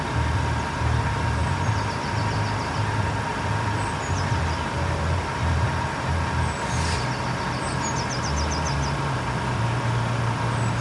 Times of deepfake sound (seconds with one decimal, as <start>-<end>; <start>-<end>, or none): 1.4-2.8; 3.3-6.1